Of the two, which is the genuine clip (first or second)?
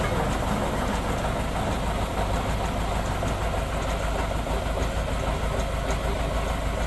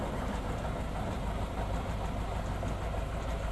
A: first